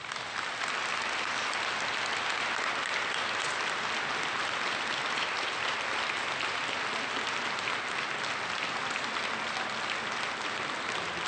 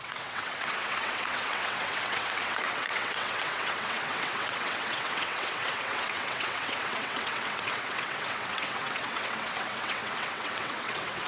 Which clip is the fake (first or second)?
second